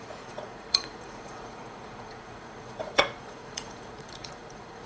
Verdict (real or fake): fake